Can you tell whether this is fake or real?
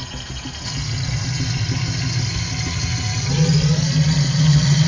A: real